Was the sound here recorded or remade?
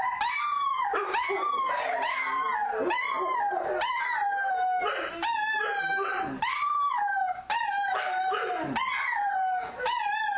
remade